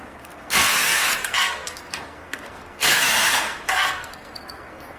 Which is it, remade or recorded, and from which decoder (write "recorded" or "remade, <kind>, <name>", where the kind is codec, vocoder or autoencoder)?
remade, codec, SNAC